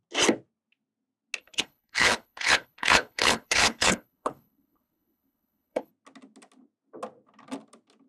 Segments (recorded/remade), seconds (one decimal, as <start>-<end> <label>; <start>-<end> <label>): 0.0-1.4 recorded; 1.4-5.9 remade; 5.9-8.1 recorded